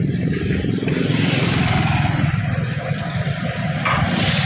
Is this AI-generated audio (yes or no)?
yes